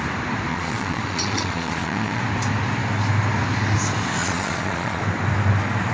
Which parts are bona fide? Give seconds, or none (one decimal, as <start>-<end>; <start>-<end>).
0.0-0.5; 2.2-4.2; 5.0-5.9